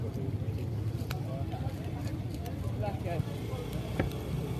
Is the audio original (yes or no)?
yes